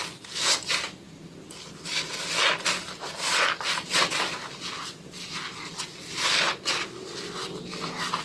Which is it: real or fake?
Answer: real